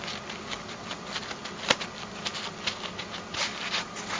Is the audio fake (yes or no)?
no